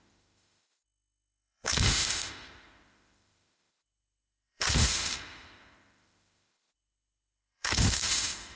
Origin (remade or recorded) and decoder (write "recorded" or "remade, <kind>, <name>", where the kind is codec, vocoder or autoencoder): remade, autoencoder, DAC-VAE